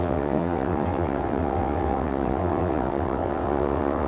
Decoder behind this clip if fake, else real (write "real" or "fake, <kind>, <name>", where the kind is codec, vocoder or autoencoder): fake, vocoder, WaveNeXt